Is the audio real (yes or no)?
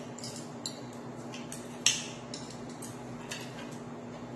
yes